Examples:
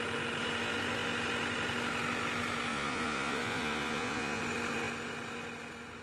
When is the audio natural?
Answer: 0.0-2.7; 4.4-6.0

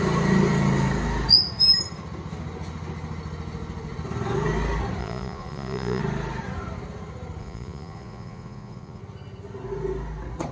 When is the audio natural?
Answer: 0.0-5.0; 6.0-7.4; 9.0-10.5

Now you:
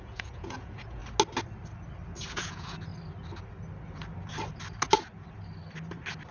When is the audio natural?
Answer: 1.0-2.3; 2.9-6.3